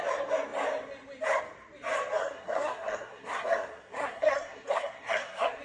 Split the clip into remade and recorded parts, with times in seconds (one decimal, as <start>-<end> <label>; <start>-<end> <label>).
0.0-2.2 recorded; 2.2-5.6 remade